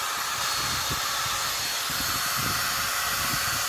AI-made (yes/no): no